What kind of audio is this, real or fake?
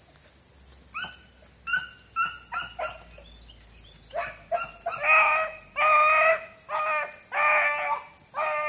real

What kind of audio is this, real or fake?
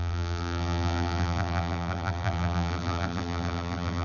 fake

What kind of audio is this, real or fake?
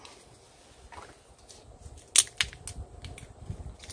real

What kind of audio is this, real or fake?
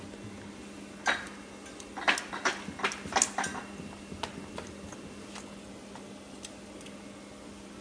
real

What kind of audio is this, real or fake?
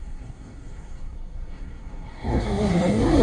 fake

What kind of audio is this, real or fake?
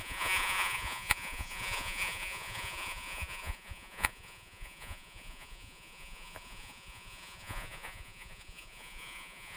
fake